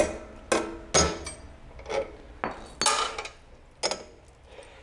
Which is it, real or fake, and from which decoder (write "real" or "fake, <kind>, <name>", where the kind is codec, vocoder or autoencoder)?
real